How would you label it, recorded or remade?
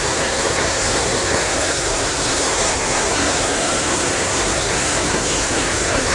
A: remade